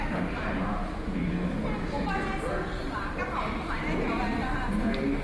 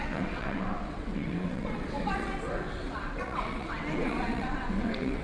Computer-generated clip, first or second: second